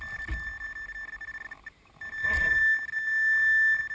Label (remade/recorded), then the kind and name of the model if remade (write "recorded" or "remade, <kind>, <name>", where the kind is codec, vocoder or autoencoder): recorded